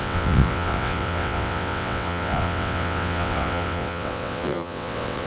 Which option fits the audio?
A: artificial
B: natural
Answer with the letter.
A